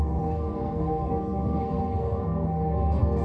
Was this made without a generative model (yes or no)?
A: no